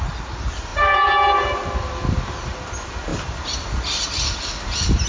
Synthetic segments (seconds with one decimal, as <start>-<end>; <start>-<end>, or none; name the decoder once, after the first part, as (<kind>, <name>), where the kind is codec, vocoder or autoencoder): none